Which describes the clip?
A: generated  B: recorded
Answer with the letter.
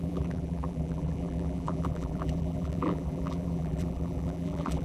A